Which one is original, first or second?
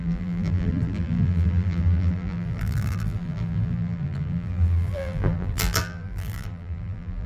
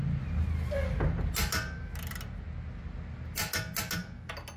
second